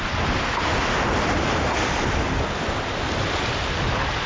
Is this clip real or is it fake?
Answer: real